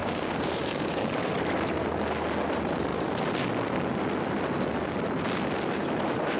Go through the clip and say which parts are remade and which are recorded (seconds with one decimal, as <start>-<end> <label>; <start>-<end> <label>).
0.0-1.3 remade; 1.3-6.4 recorded